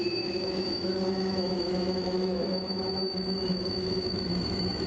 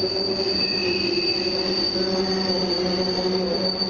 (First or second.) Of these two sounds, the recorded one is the second